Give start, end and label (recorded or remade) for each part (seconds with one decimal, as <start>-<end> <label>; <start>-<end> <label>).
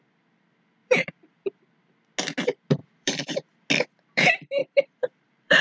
0.0-0.8 recorded; 0.8-1.6 remade; 1.6-2.8 recorded; 2.8-3.7 remade; 3.7-4.6 recorded; 4.6-5.6 remade